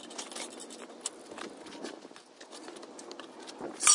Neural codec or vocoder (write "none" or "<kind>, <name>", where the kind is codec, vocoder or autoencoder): none